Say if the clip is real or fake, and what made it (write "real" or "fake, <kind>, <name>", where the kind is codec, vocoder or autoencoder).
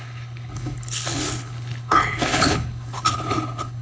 fake, codec, HILCodec